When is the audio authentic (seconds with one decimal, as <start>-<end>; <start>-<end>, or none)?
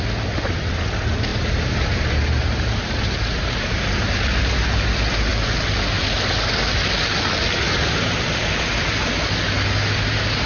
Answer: 0.0-1.3; 4.2-10.5